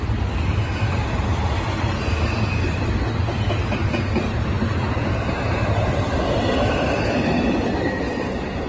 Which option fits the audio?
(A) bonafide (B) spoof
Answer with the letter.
A